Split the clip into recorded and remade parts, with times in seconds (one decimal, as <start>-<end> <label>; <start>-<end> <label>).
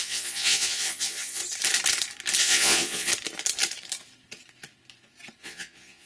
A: 0.0-1.4 remade; 1.4-2.4 recorded; 2.4-3.1 remade; 3.1-5.4 recorded; 5.4-6.1 remade